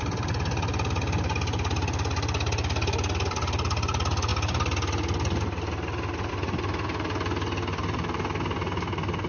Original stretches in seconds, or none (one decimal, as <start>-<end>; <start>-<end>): 0.0-9.3